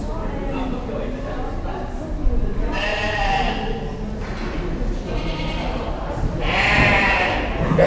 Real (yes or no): yes